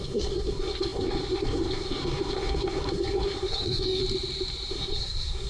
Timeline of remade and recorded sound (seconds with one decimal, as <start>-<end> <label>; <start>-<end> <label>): 0.0-4.0 remade; 4.0-4.7 recorded; 4.7-5.5 remade

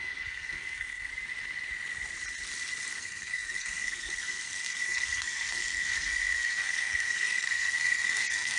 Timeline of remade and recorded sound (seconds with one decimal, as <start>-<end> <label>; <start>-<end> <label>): 0.0-1.1 remade; 1.1-2.9 recorded; 2.9-8.6 remade

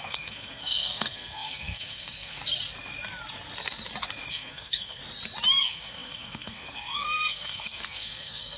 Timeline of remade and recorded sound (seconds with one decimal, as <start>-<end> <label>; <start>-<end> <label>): 0.0-2.4 remade; 2.4-4.3 recorded; 4.3-5.0 remade; 5.0-5.6 recorded; 5.6-8.6 remade

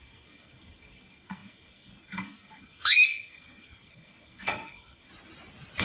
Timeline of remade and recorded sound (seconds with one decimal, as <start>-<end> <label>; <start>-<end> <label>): 0.0-5.1 remade; 5.1-5.8 recorded

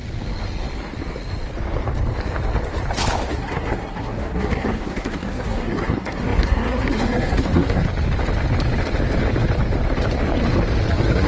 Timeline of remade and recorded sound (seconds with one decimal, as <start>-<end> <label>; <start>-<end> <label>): 0.0-3.3 recorded; 3.3-7.8 remade; 7.8-10.9 recorded; 10.9-11.3 remade

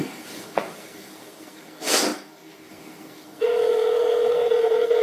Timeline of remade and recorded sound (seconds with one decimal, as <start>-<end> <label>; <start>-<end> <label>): 0.0-5.0 remade